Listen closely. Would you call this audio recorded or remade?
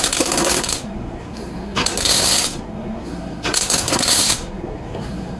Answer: remade